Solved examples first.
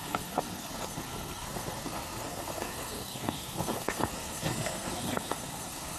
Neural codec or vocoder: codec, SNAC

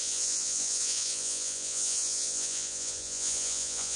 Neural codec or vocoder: vocoder, Vocos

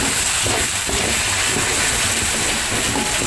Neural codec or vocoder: none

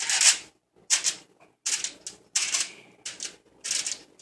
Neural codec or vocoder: none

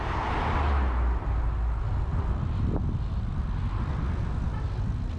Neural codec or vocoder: none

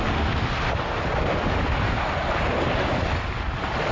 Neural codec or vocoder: none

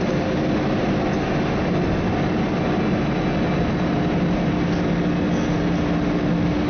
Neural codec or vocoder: none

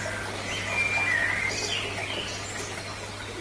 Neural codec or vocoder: none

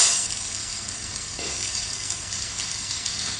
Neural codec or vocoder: codec, SNAC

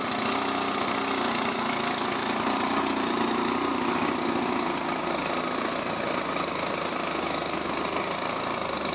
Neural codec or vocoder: none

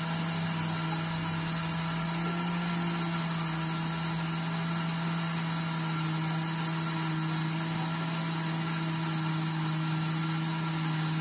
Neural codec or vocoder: none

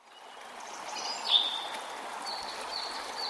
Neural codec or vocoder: none